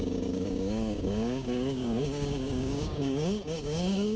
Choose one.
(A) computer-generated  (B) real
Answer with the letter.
A